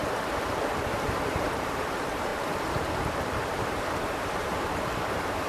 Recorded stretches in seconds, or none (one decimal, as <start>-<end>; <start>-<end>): 0.0-1.2